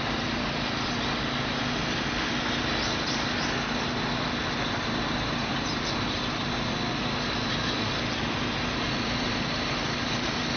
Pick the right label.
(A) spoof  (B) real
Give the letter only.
B